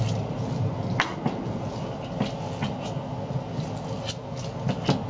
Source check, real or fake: real